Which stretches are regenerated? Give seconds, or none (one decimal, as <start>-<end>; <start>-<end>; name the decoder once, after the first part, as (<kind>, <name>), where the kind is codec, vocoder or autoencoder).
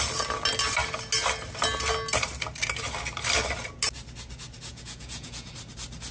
4.7-5.5 (vocoder, Vocos)